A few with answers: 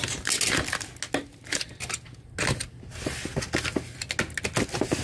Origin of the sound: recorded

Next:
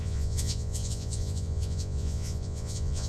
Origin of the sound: remade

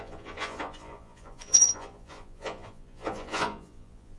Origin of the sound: remade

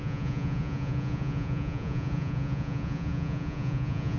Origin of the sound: remade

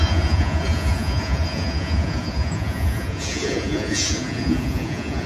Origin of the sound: remade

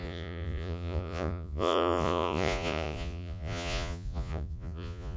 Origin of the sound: remade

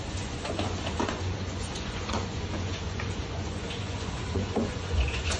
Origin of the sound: remade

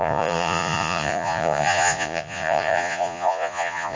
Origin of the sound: remade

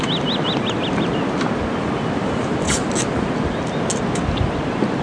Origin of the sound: recorded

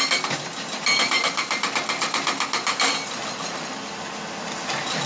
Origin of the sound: recorded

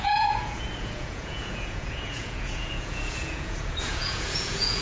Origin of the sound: remade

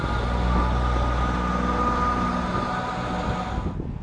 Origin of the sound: recorded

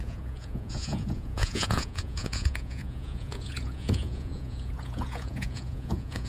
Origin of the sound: remade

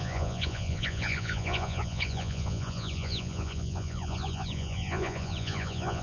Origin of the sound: remade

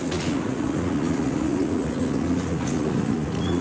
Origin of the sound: remade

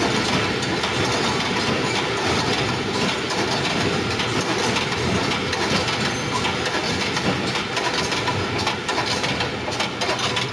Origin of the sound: recorded